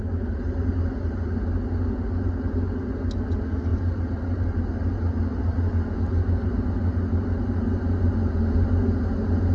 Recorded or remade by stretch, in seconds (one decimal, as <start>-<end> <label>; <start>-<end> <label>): 0.0-9.5 recorded